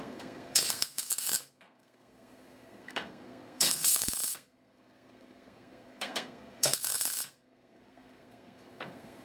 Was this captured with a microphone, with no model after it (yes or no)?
no